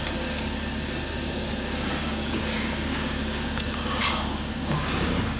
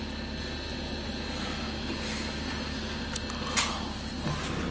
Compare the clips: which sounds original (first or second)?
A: second